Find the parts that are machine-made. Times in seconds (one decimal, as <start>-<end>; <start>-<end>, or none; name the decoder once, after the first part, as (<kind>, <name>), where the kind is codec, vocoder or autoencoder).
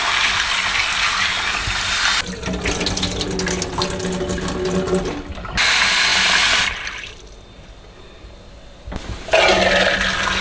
none